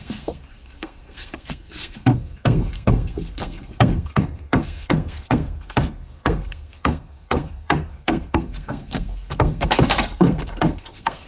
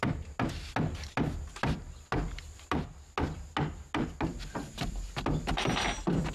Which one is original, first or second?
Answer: second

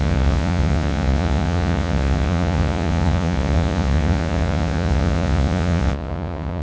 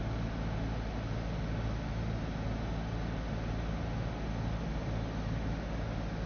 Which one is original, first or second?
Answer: second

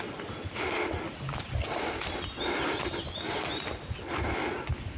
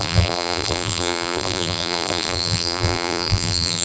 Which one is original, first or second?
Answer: first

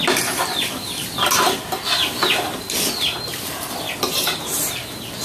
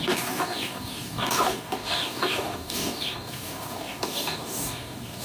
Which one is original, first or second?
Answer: first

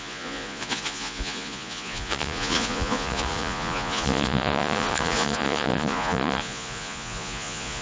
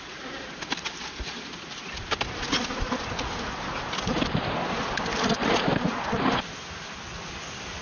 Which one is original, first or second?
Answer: second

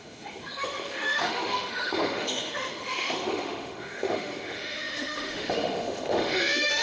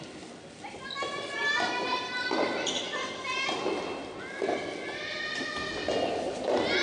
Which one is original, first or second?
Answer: second